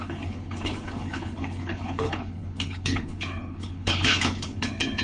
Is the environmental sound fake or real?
fake